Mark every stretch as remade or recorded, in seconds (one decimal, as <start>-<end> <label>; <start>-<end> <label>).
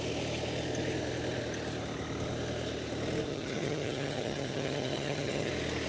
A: 0.0-3.3 recorded; 3.3-5.5 remade; 5.5-5.9 recorded